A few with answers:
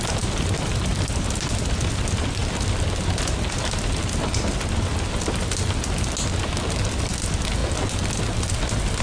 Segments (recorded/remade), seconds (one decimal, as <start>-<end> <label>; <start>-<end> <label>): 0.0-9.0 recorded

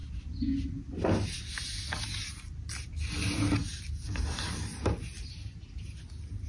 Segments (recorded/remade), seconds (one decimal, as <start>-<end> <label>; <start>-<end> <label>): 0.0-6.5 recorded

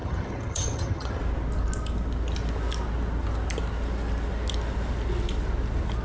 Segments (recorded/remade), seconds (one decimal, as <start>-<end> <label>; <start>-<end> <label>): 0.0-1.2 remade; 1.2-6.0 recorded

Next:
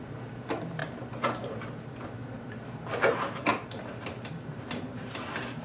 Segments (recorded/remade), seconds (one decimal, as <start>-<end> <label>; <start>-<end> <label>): 0.0-5.6 remade